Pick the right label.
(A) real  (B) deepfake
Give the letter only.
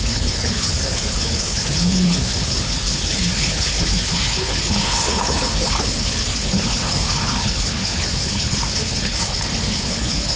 B